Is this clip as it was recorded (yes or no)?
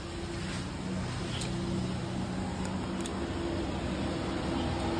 yes